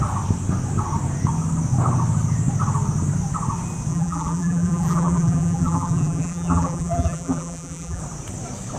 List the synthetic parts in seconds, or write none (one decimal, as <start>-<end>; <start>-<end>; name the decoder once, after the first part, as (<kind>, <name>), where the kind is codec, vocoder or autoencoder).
3.9-8.0 (vocoder, BigVGAN v2)